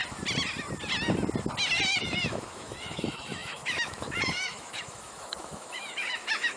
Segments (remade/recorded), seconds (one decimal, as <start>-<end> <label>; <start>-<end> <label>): 0.0-2.0 recorded; 2.0-6.6 remade